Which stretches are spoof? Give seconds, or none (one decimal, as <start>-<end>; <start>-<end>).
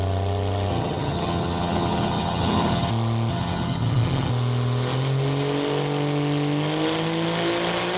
0.7-2.9; 3.3-4.3